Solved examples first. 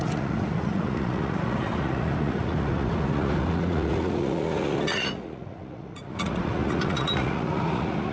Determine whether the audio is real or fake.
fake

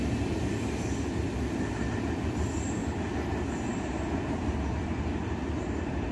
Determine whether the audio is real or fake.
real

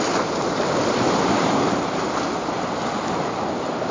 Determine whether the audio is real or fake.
real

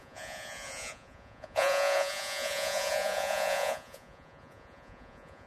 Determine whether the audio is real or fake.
fake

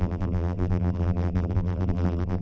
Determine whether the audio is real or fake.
fake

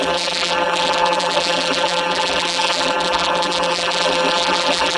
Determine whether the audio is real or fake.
fake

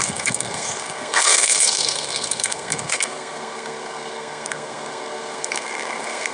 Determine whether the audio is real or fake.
fake